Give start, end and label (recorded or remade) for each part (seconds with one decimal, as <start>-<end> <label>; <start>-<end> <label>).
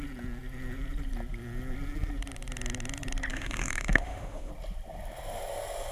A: 0.0-3.3 recorded; 3.3-4.5 remade; 4.5-5.9 recorded